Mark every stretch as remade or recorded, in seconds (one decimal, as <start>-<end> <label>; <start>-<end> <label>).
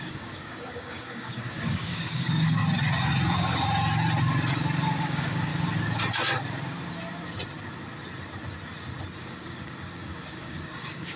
0.0-2.6 remade; 2.6-5.0 recorded; 5.0-5.5 remade; 5.5-9.2 recorded; 9.2-11.2 remade